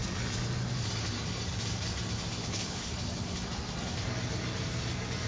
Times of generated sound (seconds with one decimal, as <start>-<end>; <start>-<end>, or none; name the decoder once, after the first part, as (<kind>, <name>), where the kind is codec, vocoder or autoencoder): 2.4-2.9 (codec, HILCodec)